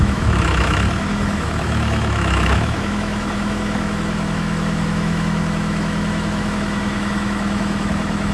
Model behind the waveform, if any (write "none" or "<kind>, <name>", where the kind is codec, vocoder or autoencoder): autoencoder, DAC-VAE